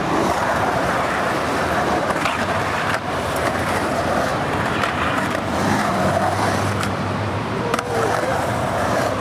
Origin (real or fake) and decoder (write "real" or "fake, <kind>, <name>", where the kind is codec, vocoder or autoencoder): fake, vocoder, BigVGAN v2